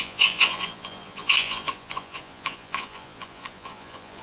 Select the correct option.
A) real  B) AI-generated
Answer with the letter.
B